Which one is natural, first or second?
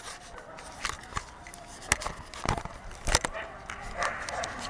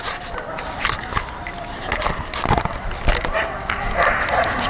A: first